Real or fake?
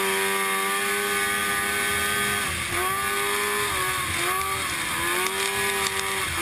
real